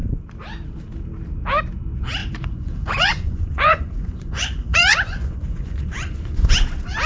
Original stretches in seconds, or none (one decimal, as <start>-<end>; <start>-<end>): 0.0-2.2; 6.5-7.1